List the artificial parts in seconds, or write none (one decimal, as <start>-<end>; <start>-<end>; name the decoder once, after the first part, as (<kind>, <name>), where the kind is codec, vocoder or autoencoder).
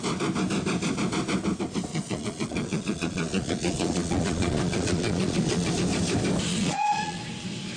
1.9-5.7 (vocoder, Vocos); 6.5-7.2